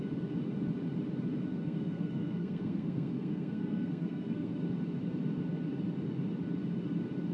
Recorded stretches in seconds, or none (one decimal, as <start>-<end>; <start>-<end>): 0.0-1.5; 4.6-7.3

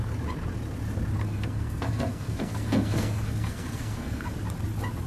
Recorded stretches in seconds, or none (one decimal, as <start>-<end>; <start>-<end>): 0.0-1.2; 4.3-5.1

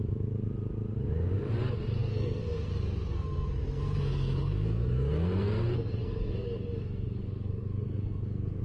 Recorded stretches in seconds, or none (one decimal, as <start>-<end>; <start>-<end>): 0.0-2.0; 2.7-3.1